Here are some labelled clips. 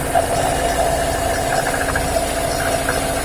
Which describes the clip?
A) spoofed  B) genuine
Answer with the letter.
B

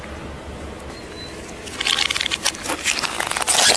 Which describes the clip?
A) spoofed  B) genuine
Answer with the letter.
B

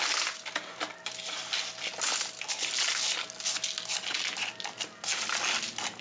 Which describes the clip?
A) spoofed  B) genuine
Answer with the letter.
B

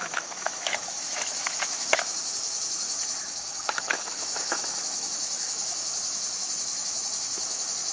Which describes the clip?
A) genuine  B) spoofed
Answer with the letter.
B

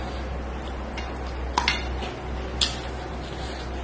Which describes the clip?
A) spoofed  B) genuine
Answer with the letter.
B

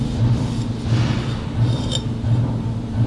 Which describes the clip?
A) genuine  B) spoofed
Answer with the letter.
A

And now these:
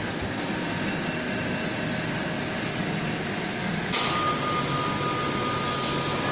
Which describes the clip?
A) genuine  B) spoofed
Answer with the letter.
A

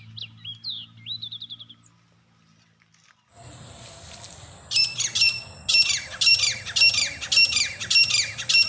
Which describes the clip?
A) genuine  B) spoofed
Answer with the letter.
A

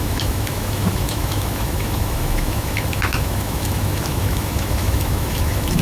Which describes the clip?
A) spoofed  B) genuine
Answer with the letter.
A